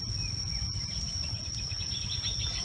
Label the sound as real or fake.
real